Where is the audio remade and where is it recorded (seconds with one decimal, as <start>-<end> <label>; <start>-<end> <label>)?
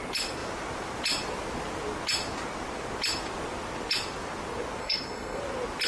0.0-4.8 recorded; 4.8-5.4 remade; 5.4-5.9 recorded